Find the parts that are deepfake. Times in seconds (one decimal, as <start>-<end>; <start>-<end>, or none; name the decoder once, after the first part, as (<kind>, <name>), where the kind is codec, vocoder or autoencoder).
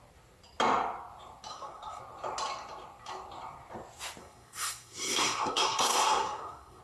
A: 1.5-2.0 (codec, SNAC); 4.2-6.8